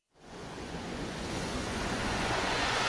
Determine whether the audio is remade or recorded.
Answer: remade